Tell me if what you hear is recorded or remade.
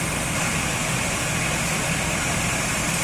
recorded